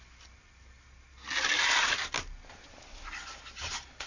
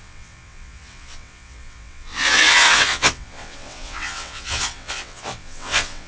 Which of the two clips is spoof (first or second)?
second